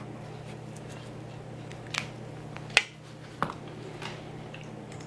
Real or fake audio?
real